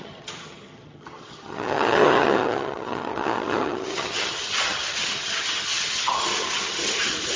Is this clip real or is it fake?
fake